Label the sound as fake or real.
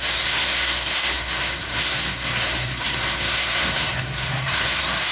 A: fake